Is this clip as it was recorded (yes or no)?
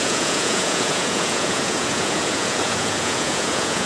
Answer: no